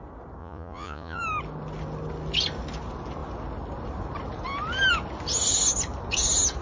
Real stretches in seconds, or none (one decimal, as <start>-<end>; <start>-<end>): 0.0-0.4; 1.2-6.6